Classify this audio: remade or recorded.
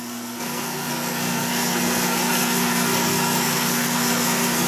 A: remade